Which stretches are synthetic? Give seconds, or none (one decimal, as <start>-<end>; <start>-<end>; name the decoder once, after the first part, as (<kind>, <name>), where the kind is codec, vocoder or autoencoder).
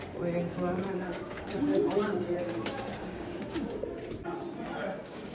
0.5-3.7 (codec, DAC); 4.8-5.3